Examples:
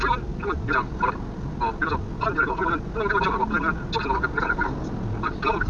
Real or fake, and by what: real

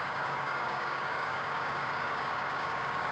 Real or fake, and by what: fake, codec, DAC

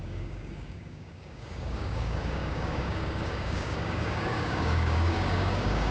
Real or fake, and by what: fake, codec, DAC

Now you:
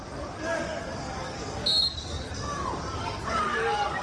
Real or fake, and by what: fake, codec, DAC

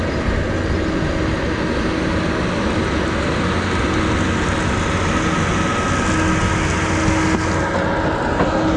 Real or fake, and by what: real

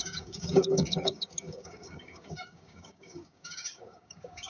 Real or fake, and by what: fake, codec, DAC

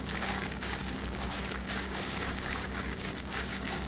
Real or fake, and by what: fake, codec, DAC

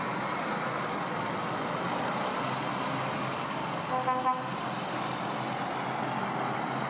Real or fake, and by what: real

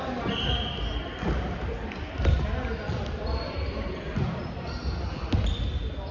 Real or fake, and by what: real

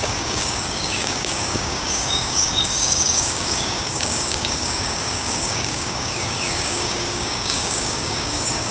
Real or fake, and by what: fake, codec, DAC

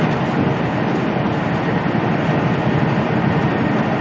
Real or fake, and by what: real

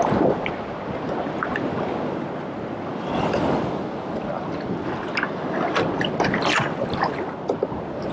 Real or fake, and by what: real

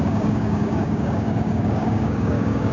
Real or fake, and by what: fake, codec, DAC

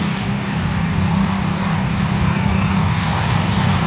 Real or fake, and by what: fake, codec, DAC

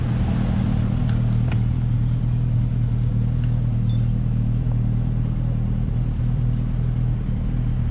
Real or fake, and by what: real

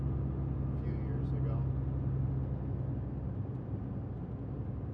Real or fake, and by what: real